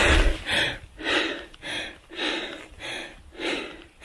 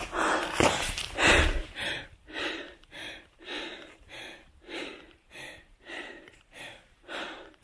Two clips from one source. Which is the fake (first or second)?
second